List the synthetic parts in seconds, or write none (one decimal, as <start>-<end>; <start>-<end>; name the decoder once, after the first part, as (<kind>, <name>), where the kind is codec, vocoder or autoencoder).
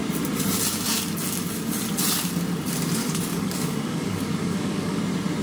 3.0-5.0 (codec, DAC)